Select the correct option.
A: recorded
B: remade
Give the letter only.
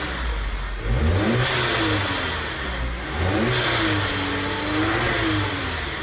A